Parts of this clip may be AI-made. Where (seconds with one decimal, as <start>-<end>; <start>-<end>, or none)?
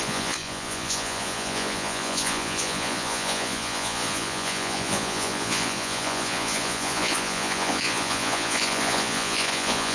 0.0-9.9